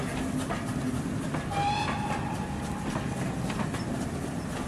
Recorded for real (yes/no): yes